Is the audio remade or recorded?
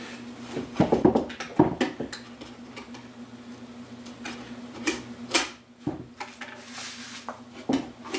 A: recorded